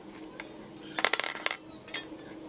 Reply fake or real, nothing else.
real